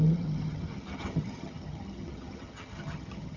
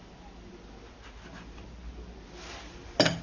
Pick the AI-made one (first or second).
first